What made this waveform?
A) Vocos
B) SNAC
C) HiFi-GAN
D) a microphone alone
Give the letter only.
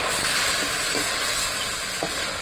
D